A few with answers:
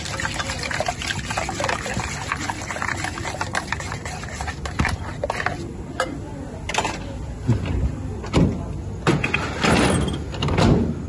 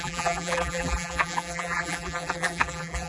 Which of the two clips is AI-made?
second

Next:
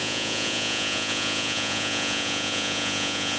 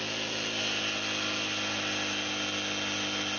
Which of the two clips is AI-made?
first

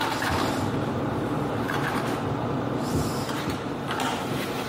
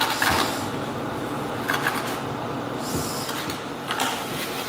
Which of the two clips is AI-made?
first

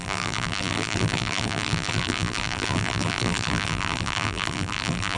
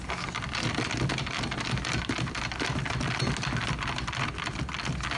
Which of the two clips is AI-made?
first